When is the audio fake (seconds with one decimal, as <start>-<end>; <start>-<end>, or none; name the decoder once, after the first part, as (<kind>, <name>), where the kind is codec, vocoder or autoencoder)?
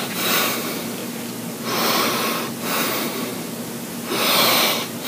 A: 0.0-1.0 (vocoder, BigVGAN v2); 2.9-3.3; 3.9-5.1